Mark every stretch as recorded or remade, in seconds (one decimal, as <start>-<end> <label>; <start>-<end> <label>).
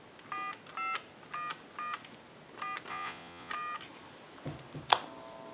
0.0-2.9 recorded; 2.9-3.5 remade; 3.5-5.5 recorded